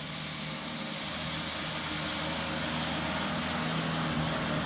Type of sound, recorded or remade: recorded